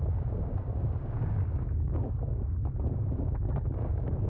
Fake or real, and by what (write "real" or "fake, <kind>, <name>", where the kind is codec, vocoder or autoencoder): fake, codec, DAC